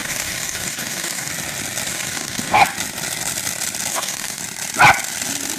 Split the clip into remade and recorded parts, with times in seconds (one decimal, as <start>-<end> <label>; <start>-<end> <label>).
0.0-1.3 remade; 1.3-1.9 recorded; 1.9-2.6 remade; 2.6-3.9 recorded; 3.9-4.4 remade; 4.4-5.6 recorded